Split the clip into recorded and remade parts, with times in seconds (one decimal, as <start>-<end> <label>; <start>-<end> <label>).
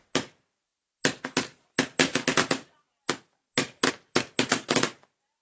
0.0-5.4 recorded